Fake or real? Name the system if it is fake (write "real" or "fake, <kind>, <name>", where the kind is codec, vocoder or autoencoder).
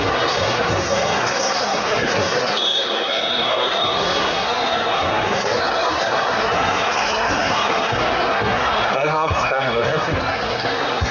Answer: fake, codec, SNAC